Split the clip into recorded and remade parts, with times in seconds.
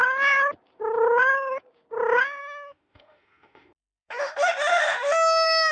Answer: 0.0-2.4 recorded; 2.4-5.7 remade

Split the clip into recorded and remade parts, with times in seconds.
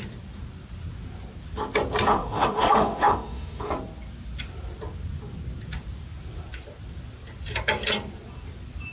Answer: 0.0-2.1 recorded; 2.1-3.7 remade; 3.7-8.9 recorded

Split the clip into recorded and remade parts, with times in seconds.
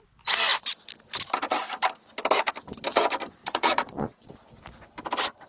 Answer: 0.0-3.4 recorded; 3.4-4.3 remade; 4.3-5.5 recorded